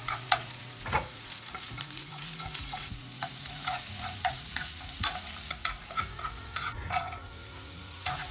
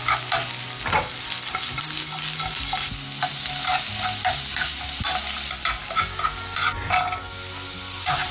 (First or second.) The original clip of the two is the second